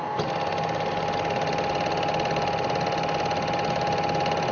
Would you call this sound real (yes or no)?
yes